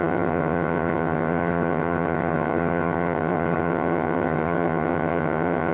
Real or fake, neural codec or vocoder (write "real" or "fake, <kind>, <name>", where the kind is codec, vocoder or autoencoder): fake, vocoder, HiFi-GAN